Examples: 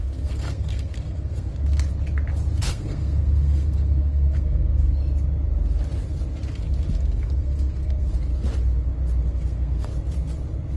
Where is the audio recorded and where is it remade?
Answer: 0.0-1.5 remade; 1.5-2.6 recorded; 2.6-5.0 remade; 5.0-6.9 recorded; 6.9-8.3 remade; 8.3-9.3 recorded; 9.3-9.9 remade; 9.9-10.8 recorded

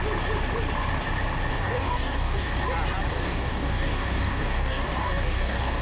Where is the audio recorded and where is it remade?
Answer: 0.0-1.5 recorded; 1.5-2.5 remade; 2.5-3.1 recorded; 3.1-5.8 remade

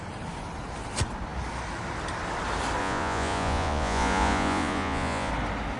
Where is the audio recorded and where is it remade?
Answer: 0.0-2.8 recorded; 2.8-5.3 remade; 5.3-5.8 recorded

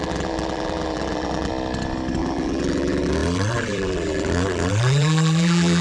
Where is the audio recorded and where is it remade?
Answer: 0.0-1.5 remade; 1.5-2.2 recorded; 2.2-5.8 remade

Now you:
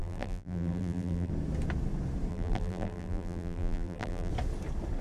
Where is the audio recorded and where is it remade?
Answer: 0.0-1.3 remade; 1.3-2.3 recorded; 2.3-4.3 remade; 4.3-5.0 recorded

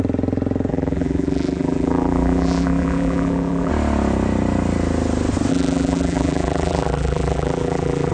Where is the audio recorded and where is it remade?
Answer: 0.0-0.7 recorded; 0.7-3.7 remade; 3.7-5.5 recorded; 5.5-8.1 remade